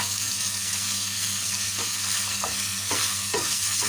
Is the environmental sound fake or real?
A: fake